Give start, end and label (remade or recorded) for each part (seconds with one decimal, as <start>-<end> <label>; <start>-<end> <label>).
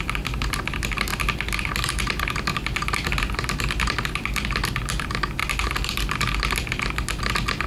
0.0-7.7 recorded